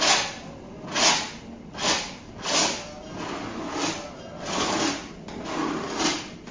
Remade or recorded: recorded